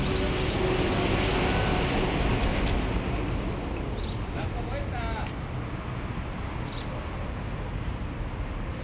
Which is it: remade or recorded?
recorded